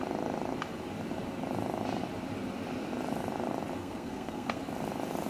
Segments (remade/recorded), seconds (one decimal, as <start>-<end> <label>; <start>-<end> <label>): 0.0-3.8 recorded; 3.8-4.6 remade; 4.6-5.3 recorded